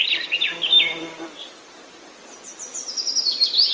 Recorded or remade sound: recorded